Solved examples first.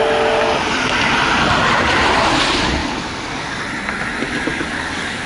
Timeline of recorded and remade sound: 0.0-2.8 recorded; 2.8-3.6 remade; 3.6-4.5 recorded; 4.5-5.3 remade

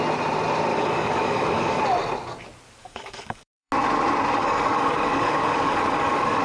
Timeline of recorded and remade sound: 0.0-0.7 recorded; 0.7-1.8 remade; 1.8-2.8 recorded; 2.8-3.7 remade; 3.7-4.4 recorded; 4.4-6.4 remade

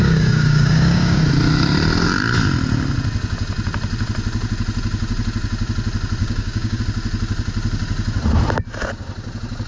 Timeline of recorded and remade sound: 0.0-1.2 remade; 1.2-6.2 recorded; 6.2-6.8 remade; 6.8-9.7 recorded

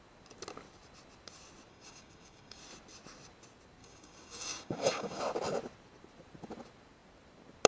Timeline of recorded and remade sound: 0.0-1.7 recorded; 1.7-2.6 remade; 2.6-3.8 recorded; 3.8-5.2 remade; 5.2-7.7 recorded

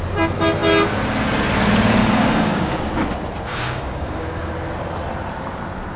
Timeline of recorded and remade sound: 0.0-2.0 recorded; 2.0-2.8 remade; 2.8-3.5 recorded; 3.5-4.5 remade; 4.5-6.0 recorded

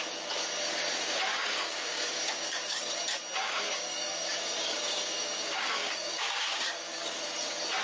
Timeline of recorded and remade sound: 0.0-1.3 recorded; 1.3-2.9 remade; 2.9-3.4 recorded; 3.4-7.2 remade; 7.2-7.8 recorded

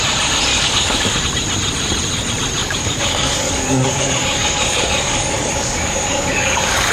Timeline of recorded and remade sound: 0.0-0.5 recorded; 0.5-1.2 remade; 1.2-2.6 recorded; 2.6-6.9 remade